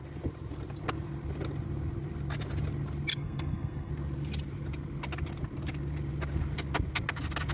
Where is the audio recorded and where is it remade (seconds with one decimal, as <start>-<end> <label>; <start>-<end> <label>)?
0.0-3.1 recorded; 3.1-3.9 remade; 3.9-7.5 recorded